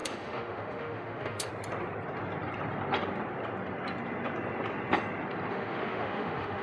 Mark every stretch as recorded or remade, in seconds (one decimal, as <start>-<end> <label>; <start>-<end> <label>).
0.0-1.5 remade; 1.5-5.5 recorded; 5.5-6.6 remade